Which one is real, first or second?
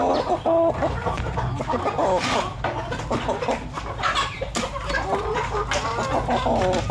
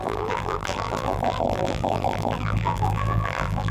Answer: first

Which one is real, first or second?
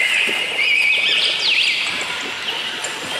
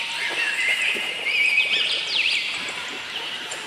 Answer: first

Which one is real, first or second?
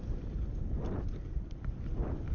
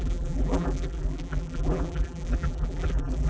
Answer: first